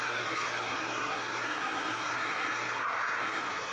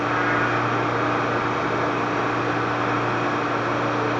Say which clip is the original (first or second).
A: second